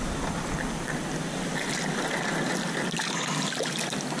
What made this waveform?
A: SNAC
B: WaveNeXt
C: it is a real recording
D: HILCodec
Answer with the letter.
C